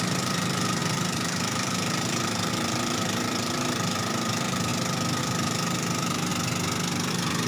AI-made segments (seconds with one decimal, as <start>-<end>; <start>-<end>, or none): 0.0-4.7; 5.2-6.3; 7.1-7.5